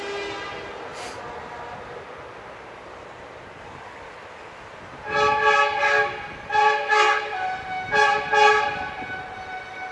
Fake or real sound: real